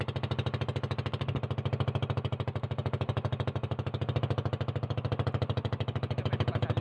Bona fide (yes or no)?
yes